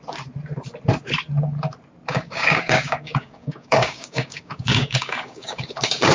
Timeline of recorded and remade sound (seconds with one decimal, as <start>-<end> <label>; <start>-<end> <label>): 0.0-2.1 recorded; 2.1-6.1 remade